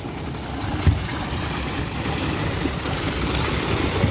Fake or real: real